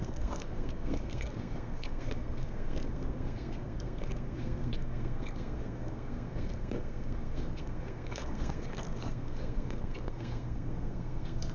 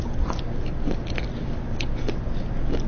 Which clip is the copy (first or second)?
first